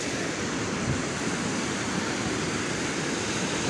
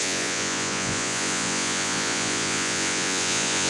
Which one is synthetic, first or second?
second